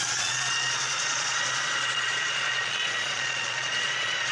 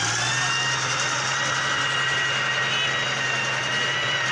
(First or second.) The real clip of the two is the second